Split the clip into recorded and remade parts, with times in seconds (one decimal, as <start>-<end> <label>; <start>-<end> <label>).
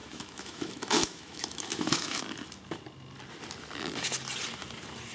0.0-2.2 remade; 2.2-5.1 recorded